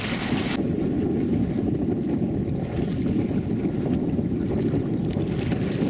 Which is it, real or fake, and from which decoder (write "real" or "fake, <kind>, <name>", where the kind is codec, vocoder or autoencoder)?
real